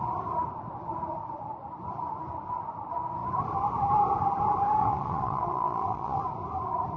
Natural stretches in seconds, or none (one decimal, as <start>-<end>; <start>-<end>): 0.0-4.8; 6.2-7.0